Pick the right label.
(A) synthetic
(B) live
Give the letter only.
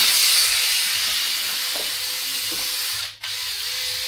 B